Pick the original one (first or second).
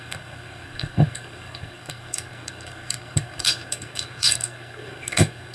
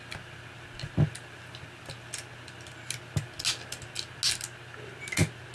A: second